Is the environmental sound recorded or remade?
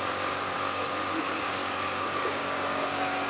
remade